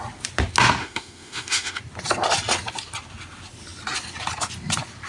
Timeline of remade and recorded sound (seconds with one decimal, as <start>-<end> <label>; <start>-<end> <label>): 0.0-0.8 recorded; 0.8-1.8 remade; 1.8-5.1 recorded